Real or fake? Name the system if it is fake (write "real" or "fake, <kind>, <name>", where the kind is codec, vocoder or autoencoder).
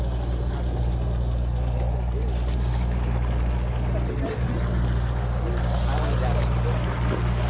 real